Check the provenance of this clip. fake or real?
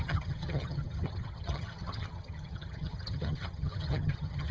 fake